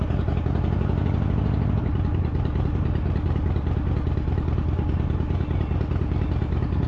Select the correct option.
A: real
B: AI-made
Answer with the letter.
A